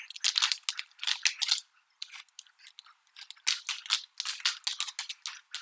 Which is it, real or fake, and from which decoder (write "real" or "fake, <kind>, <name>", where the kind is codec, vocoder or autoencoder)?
real